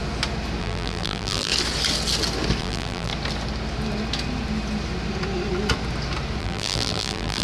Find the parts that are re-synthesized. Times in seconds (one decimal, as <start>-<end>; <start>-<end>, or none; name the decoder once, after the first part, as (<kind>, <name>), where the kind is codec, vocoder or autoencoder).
0.6-1.5 (vocoder, BigVGAN v2); 2.6-3.1; 6.4-7.4